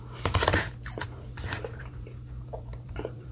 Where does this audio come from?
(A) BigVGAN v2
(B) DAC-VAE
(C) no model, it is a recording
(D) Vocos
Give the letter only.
A